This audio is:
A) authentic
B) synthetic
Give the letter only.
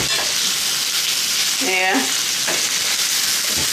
A